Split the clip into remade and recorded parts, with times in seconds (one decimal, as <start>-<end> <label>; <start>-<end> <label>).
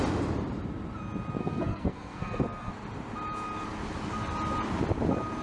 0.0-1.4 recorded; 1.4-2.7 remade; 2.7-5.4 recorded